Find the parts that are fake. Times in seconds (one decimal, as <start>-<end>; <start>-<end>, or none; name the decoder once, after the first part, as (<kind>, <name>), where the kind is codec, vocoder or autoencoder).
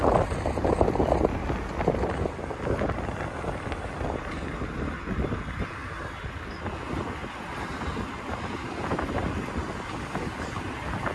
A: none